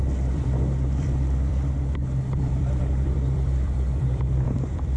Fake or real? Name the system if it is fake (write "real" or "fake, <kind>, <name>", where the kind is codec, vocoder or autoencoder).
fake, vocoder, BigVGAN v2